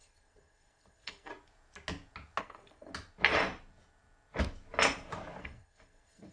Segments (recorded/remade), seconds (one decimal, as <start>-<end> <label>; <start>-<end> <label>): 0.0-1.3 remade; 1.3-2.4 recorded; 2.4-2.9 remade; 2.9-5.4 recorded; 5.4-6.3 remade